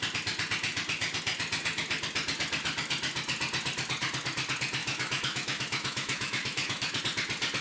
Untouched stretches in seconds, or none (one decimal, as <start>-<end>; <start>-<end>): 0.0-4.8; 7.0-7.6